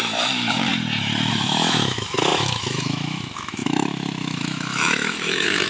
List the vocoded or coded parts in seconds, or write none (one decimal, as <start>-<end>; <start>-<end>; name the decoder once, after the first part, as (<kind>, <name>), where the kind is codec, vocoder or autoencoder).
0.0-0.7 (autoencoder, DAC-VAE); 1.3-5.7